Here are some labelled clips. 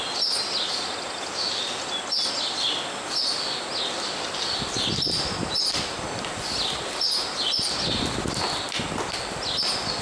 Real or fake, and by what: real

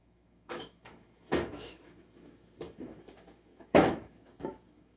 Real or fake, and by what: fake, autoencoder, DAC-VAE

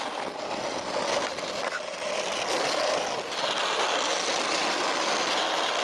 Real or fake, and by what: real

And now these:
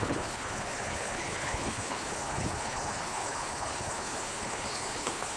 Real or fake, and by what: fake, codec, HILCodec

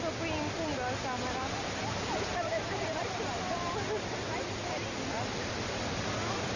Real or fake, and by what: real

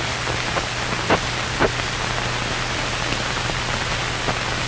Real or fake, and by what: real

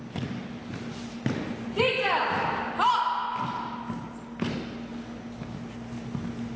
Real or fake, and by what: real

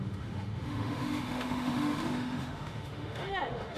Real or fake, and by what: fake, autoencoder, DAC-VAE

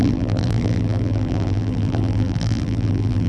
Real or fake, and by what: fake, vocoder, BigVGAN v2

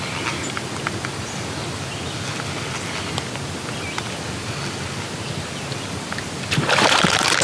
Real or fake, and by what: real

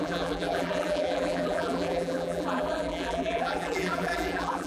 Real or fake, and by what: fake, vocoder, BigVGAN v2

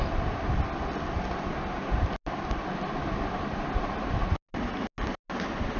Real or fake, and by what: real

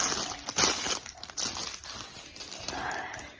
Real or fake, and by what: real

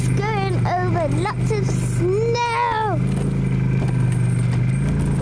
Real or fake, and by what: real